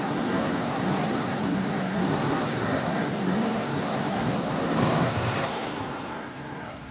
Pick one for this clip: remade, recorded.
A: remade